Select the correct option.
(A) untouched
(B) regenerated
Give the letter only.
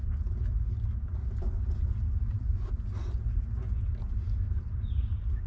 A